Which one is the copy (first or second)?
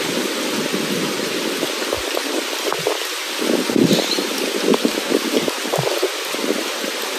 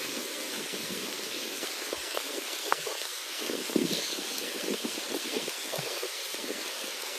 second